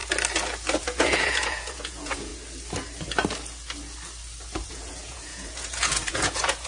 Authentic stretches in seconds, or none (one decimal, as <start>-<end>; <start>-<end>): 0.0-0.8; 2.3-4.7